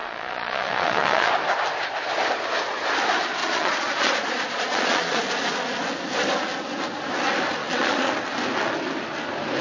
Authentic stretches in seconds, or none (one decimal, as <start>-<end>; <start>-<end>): 1.3-3.4; 5.2-7.6; 8.1-9.6